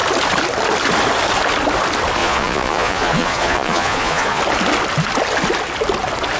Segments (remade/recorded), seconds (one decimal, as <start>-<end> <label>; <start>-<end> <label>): 0.0-2.2 recorded; 2.2-4.4 remade; 4.4-6.4 recorded